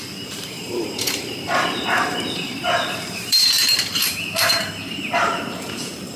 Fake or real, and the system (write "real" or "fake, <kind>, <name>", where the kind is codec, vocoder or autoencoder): fake, vocoder, BigVGAN v2